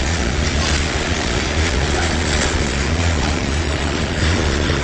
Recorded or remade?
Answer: remade